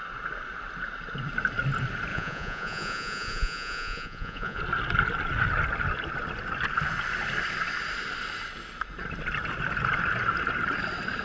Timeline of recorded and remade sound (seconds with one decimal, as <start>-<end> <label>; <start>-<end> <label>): 0.0-2.1 recorded; 2.1-4.6 remade; 4.6-11.2 recorded